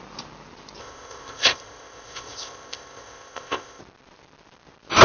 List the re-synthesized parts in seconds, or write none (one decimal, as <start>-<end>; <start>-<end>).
0.8-3.8